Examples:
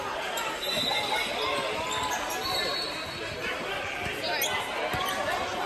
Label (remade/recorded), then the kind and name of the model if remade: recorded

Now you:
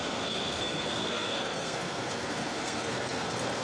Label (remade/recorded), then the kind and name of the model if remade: remade, codec, SNAC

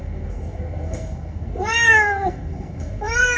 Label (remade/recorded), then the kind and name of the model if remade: remade, codec, SNAC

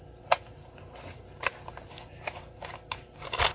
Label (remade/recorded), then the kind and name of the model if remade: recorded